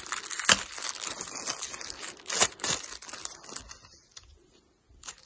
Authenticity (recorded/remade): recorded